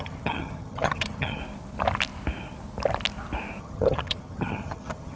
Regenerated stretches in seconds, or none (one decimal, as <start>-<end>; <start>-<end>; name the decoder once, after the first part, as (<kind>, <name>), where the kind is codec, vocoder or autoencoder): 0.0-1.4 (vocoder, HiFi-GAN); 3.6-5.2